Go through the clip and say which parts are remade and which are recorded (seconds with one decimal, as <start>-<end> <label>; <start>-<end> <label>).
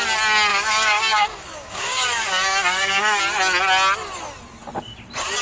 0.0-0.5 recorded; 0.5-3.2 remade; 3.2-5.4 recorded